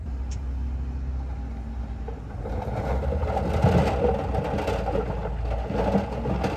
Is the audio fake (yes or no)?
no